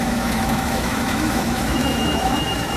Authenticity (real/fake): fake